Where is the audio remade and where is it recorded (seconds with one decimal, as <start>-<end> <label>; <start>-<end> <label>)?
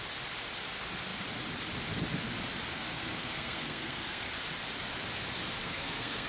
0.0-2.7 recorded; 2.7-4.3 remade; 4.3-5.6 recorded; 5.6-6.3 remade